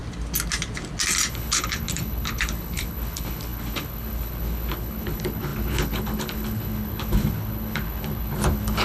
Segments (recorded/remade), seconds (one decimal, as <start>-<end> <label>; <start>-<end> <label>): 0.0-1.3 recorded; 1.3-8.8 remade